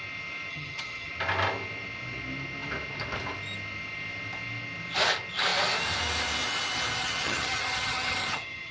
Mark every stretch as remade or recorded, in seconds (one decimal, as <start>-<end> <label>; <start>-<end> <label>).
0.0-0.5 recorded; 0.5-1.1 remade; 1.1-7.0 recorded; 7.0-8.7 remade